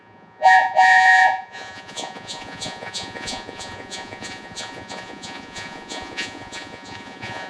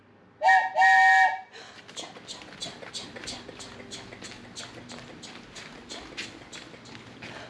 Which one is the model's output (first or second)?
first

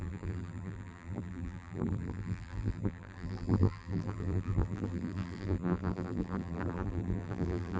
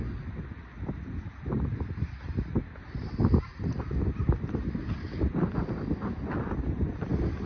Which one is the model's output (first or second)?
first